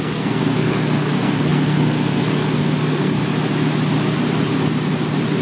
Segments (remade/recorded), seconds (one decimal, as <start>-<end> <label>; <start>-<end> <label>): 0.0-3.2 remade; 3.2-5.4 recorded